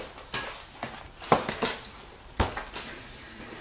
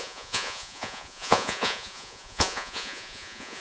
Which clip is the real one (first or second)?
first